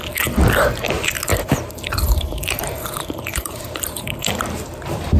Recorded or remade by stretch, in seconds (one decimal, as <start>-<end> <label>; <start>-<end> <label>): 0.0-1.3 recorded; 1.3-4.4 remade; 4.4-5.2 recorded